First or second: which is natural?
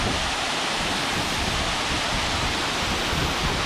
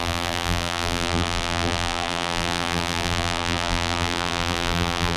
first